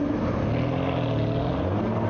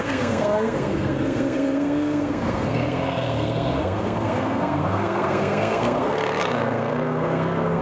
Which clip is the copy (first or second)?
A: second